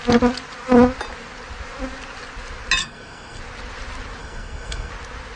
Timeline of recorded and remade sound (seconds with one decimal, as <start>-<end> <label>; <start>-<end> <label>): 0.0-2.8 recorded; 2.8-3.4 remade; 3.4-4.2 recorded; 4.2-4.9 remade; 4.9-5.4 recorded